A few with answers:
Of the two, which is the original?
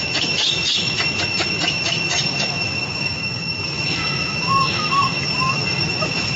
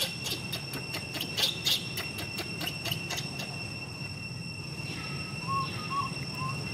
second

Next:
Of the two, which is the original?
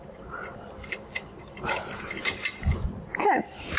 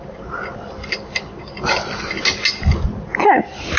second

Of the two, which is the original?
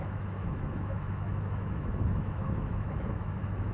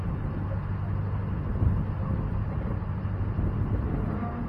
second